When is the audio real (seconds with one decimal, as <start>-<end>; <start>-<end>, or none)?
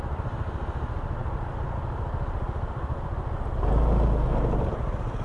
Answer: 0.0-5.2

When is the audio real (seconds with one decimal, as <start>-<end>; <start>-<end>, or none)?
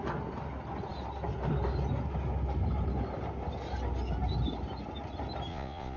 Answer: 0.0-5.5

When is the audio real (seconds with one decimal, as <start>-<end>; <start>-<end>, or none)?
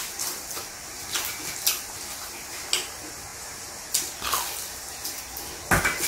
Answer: 0.0-6.1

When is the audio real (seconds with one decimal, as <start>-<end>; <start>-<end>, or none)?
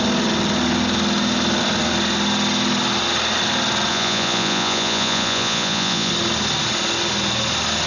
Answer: 0.0-3.9; 6.1-7.9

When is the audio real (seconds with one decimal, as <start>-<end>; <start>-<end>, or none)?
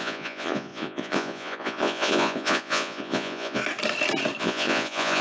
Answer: 3.6-4.4